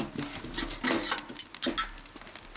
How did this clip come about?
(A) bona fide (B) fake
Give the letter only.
A